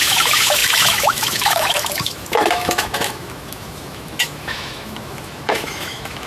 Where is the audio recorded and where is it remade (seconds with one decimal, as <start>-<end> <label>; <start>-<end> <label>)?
0.0-6.3 remade